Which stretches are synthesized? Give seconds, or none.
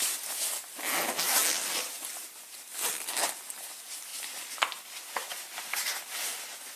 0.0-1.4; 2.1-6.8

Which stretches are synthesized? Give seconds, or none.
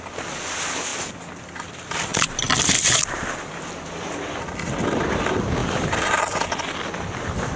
2.1-5.0; 5.6-6.5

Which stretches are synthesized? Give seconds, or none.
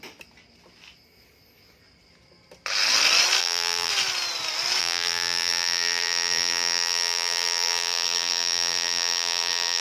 3.4-3.9; 4.8-9.8